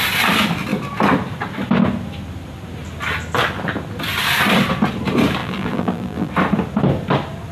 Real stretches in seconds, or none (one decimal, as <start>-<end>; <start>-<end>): 0.0-5.4; 6.3-7.5